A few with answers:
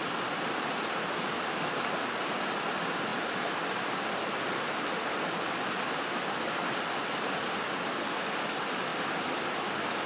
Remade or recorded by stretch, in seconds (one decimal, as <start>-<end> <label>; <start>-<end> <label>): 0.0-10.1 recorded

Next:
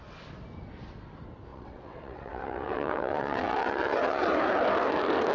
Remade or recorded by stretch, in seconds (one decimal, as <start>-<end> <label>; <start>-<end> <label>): 0.0-1.5 recorded; 1.5-4.4 remade; 4.4-5.3 recorded

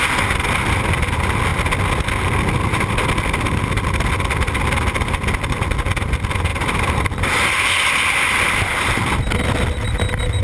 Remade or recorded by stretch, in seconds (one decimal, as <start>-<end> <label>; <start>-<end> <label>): 0.0-10.4 recorded

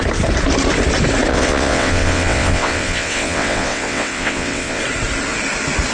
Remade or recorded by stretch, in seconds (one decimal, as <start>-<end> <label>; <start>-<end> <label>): 0.0-1.3 recorded; 1.3-4.8 remade; 4.8-5.9 recorded

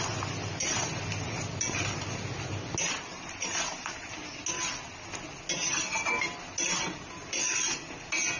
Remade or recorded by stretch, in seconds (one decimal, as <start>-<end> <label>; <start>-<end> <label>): 0.0-8.4 recorded

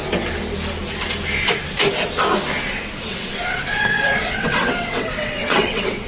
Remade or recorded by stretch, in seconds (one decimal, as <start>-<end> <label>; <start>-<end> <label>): 0.0-3.1 recorded; 3.1-6.1 remade